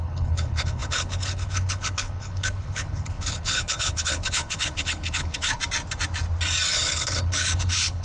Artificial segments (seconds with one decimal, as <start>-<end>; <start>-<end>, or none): 0.0-5.6; 6.7-8.0